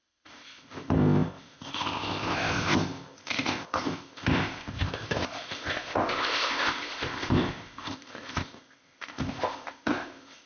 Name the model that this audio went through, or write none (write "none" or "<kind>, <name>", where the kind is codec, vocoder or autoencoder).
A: codec, ZipCodec